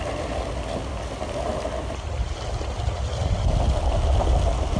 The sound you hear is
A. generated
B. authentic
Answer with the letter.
B